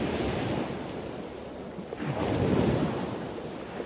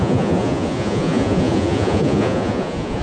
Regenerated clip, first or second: second